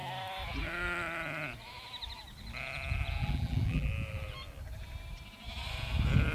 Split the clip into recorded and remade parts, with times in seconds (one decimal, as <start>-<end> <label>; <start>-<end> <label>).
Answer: 0.0-3.2 recorded; 3.2-3.9 remade; 3.9-6.3 recorded